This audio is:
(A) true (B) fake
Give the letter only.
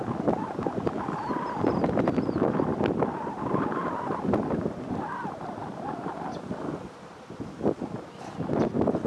A